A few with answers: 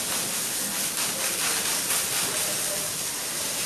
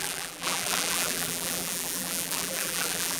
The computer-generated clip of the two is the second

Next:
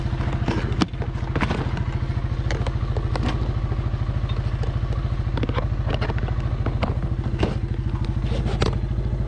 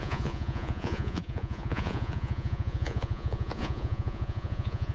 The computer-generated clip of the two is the second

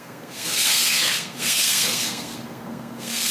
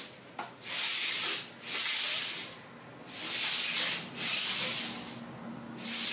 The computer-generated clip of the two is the first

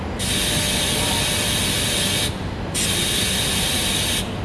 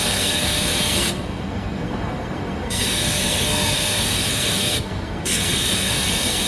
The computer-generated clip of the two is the second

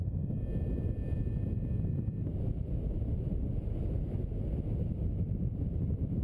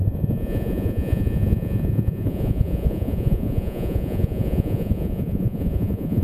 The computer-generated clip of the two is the second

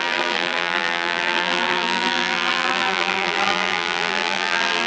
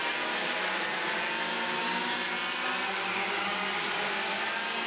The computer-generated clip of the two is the first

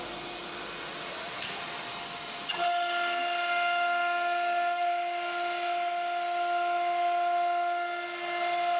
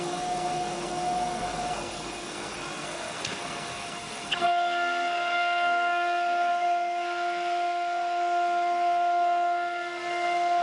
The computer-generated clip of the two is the second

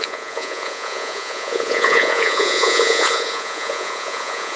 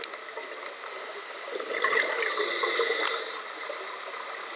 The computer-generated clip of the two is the first